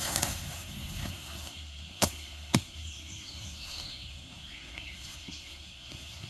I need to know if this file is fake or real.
fake